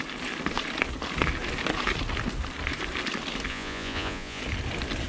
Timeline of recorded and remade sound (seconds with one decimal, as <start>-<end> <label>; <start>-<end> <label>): 0.0-3.5 recorded; 3.5-4.4 remade; 4.4-5.1 recorded